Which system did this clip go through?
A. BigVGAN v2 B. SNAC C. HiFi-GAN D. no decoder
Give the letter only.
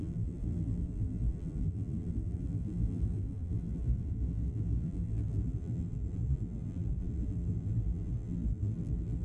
A